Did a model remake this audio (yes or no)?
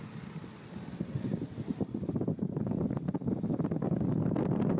no